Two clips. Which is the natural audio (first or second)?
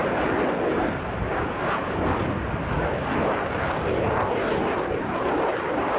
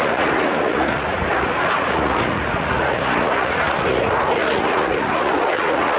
first